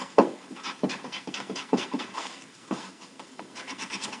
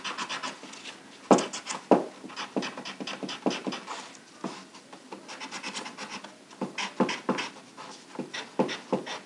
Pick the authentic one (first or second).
second